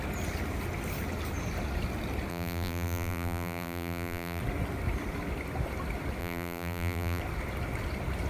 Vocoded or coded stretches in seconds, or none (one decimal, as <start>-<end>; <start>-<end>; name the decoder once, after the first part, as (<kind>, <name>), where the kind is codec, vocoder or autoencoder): 2.3-4.4 (vocoder, BigVGAN v2); 6.2-7.2